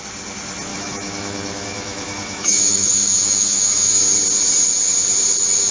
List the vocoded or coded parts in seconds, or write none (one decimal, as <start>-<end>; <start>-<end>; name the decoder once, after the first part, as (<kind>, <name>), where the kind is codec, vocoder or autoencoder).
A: 0.7-3.9 (autoencoder, DAC-VAE)